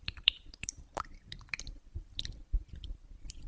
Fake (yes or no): yes